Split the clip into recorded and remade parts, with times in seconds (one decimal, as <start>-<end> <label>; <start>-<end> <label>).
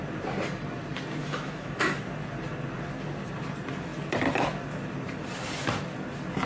0.0-1.2 recorded; 1.2-2.0 remade; 2.0-6.5 recorded